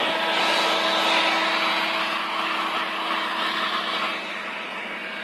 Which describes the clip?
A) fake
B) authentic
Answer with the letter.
B